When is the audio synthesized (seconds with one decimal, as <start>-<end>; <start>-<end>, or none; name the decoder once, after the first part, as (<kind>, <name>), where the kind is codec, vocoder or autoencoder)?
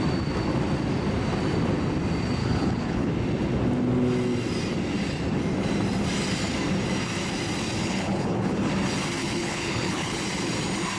2.4-3.1 (codec, HILCodec); 7.8-8.7; 9.2-10.2